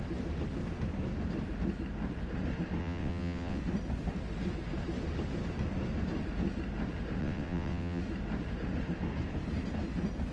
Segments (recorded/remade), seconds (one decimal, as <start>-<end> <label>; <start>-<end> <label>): 0.0-2.8 recorded; 2.8-3.6 remade; 3.6-7.2 recorded; 7.2-8.0 remade; 8.0-10.3 recorded